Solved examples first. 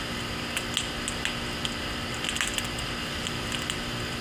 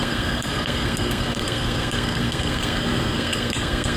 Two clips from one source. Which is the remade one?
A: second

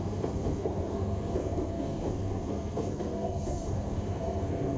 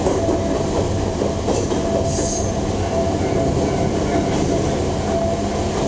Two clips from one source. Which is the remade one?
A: first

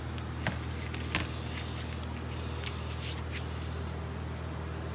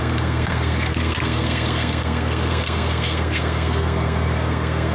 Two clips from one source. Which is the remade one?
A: second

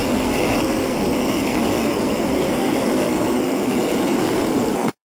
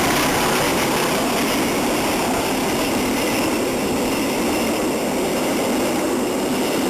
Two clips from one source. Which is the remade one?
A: first